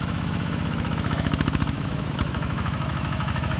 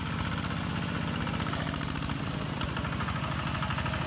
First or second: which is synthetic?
first